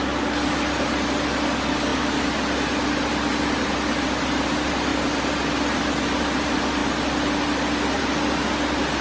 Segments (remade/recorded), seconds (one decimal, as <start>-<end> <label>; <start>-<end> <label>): 0.0-9.0 recorded